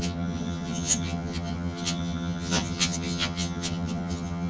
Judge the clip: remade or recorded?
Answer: remade